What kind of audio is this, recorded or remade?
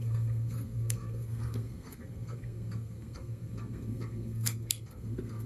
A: remade